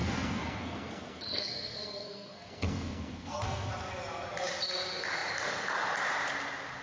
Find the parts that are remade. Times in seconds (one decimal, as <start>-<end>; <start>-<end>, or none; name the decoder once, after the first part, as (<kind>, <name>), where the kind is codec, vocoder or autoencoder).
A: 0.0-3.7 (codec, SNAC)